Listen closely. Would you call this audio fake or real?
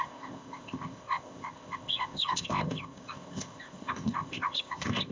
fake